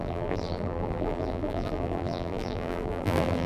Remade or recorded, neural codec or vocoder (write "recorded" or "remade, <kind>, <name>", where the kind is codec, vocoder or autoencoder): remade, vocoder, BigVGAN v2